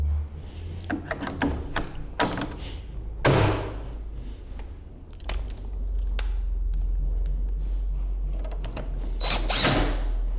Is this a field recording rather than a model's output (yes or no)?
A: yes